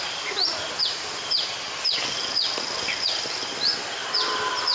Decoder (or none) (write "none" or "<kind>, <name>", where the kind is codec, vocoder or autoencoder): none